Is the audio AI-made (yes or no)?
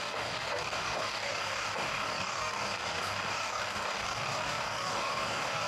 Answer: yes